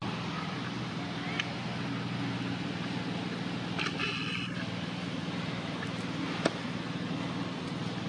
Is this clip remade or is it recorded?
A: recorded